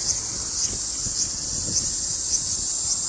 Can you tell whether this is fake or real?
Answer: real